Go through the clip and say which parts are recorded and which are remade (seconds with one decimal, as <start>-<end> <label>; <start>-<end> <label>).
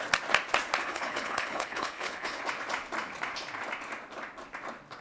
0.0-0.8 recorded; 0.8-2.4 remade; 2.4-5.0 recorded